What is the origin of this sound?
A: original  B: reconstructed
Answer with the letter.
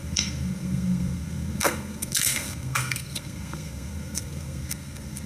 B